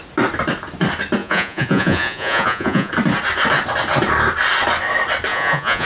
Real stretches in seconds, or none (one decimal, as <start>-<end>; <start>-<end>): 0.0-1.2; 2.9-5.3